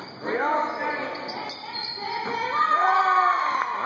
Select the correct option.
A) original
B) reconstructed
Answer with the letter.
A